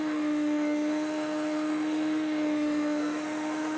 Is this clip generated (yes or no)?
yes